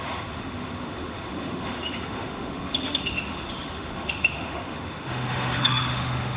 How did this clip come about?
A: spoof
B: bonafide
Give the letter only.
A